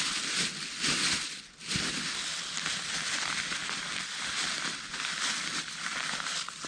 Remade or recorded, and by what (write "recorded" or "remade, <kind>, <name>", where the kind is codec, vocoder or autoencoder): recorded